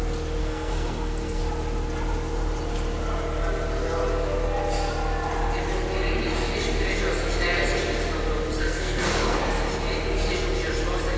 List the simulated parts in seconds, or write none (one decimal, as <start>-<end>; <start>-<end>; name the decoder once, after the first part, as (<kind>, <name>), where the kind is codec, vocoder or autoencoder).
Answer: 0.4-1.4 (codec, SNAC); 8.6-9.4